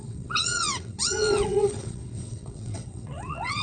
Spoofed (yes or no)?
yes